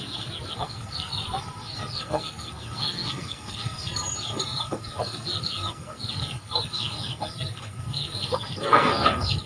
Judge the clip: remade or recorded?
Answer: remade